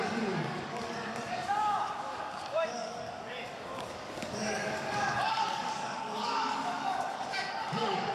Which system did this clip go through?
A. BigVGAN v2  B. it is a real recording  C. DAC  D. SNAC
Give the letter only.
C